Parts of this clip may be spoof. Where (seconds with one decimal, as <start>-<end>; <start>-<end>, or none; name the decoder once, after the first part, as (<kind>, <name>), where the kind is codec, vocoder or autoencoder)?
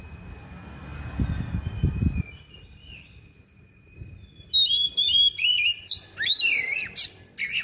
none